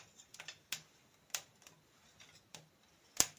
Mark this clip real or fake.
real